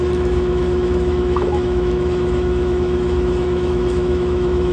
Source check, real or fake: fake